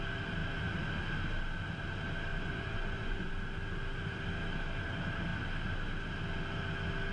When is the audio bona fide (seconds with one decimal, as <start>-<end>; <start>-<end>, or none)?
0.0-2.3; 3.3-7.1